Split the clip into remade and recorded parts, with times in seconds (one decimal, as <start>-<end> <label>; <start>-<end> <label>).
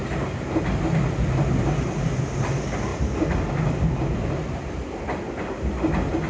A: 0.0-6.3 recorded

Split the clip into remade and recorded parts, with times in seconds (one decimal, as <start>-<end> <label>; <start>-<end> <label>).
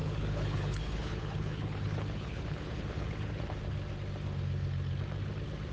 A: 0.0-3.4 remade; 3.4-5.7 recorded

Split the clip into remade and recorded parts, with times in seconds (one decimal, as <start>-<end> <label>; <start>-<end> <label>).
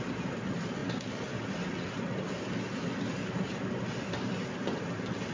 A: 0.0-5.3 recorded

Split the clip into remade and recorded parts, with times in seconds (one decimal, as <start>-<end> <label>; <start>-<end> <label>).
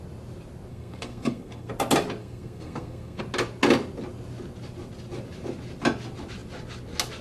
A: 0.0-0.7 recorded; 0.7-1.7 remade; 1.7-2.2 recorded; 2.2-3.2 remade; 3.2-7.2 recorded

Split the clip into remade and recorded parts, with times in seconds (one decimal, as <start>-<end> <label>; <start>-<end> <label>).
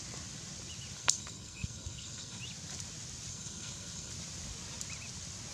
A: 0.0-1.0 recorded; 1.0-2.4 remade; 2.4-3.3 recorded; 3.3-4.1 remade; 4.1-5.5 recorded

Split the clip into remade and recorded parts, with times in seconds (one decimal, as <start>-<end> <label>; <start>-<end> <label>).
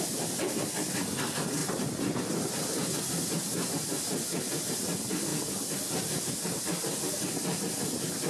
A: 0.0-8.3 recorded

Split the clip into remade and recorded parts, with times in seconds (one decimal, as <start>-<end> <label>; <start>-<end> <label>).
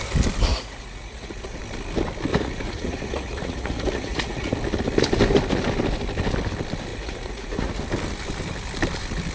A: 0.0-0.5 recorded; 0.5-1.6 remade; 1.6-2.3 recorded; 2.3-4.5 remade; 4.5-6.9 recorded; 6.9-7.8 remade; 7.8-9.3 recorded